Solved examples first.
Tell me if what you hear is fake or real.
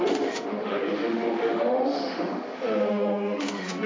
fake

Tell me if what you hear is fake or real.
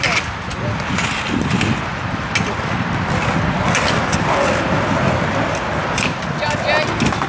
real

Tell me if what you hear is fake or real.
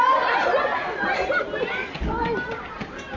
real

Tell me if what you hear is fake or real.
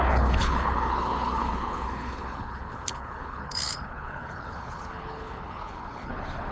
fake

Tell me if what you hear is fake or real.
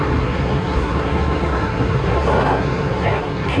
fake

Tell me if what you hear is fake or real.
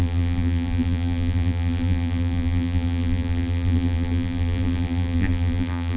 fake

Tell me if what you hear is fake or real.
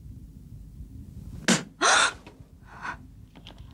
real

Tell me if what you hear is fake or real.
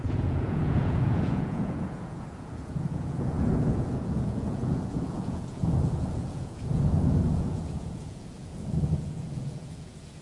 fake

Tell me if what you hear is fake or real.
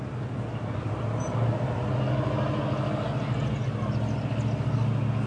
real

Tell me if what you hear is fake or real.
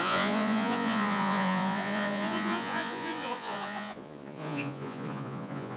fake